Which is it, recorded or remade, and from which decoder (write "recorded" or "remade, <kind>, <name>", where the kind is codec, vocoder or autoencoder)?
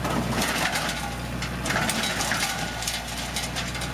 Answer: recorded